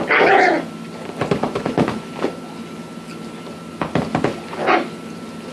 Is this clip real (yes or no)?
yes